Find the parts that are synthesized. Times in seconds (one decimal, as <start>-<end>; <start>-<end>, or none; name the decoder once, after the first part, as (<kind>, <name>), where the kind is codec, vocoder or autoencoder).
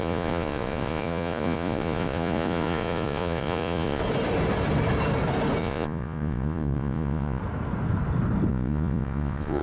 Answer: 0.0-4.0 (vocoder, Vocos); 5.6-7.4; 8.5-9.6